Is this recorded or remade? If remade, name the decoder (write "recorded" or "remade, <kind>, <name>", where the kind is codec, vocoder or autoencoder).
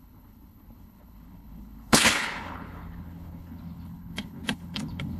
remade, codec, HILCodec